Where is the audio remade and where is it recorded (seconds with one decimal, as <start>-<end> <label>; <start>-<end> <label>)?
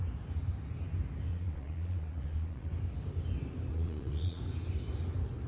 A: 0.0-1.3 recorded; 1.3-2.7 remade; 2.7-3.7 recorded; 3.7-4.4 remade; 4.4-5.5 recorded